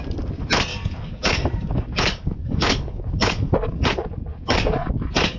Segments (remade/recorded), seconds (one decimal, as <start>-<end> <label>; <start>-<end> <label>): 0.0-0.7 recorded; 0.7-3.9 remade; 3.9-4.3 recorded; 4.3-5.4 remade